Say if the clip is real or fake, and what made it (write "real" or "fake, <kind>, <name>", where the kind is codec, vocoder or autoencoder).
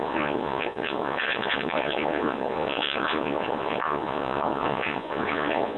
fake, vocoder, Vocos